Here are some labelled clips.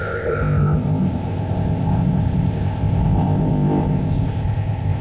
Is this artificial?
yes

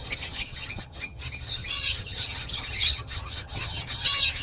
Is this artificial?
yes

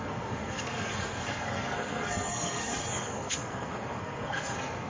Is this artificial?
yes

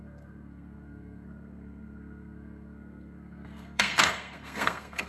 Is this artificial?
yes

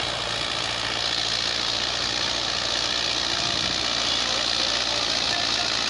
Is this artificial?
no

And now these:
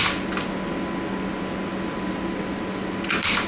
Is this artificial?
no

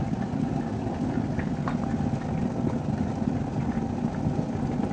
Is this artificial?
no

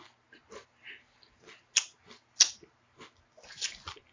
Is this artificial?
no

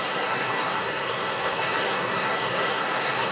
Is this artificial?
yes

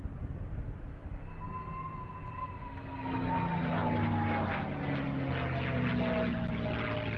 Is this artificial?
no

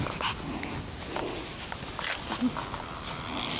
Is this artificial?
no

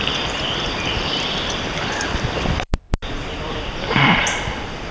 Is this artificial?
yes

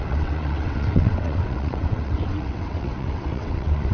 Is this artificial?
yes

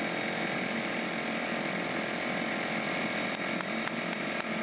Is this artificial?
no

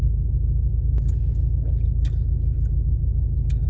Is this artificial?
no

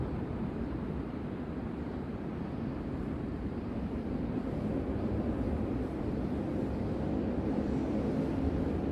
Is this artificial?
yes